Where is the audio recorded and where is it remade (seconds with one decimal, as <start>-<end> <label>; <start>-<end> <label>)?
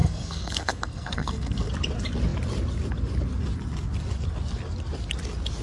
0.0-1.7 remade; 1.7-5.6 recorded